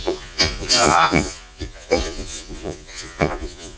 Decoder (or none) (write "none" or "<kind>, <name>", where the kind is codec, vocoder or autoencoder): vocoder, Vocos